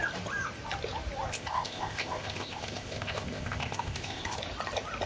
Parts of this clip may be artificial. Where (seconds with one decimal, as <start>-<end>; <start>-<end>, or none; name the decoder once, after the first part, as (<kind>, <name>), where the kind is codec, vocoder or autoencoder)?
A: 1.3-4.4 (codec, ZipCodec)